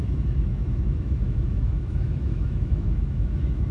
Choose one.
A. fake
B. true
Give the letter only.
A